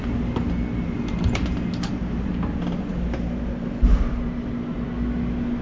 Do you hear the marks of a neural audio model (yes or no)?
no